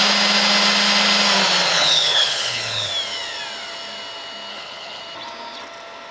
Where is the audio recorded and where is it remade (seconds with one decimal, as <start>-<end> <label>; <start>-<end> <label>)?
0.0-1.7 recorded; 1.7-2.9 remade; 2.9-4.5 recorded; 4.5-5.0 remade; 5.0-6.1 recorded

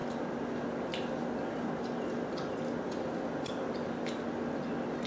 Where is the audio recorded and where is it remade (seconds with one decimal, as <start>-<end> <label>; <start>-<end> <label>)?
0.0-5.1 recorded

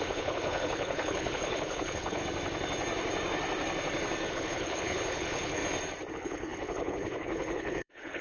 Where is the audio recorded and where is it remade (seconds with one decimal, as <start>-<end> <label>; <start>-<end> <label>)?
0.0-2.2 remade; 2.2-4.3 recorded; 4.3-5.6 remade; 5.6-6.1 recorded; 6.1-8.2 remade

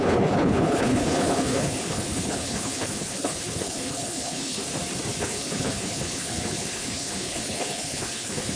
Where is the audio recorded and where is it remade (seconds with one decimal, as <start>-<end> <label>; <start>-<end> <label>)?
0.0-4.6 remade; 4.6-5.2 recorded; 5.2-8.6 remade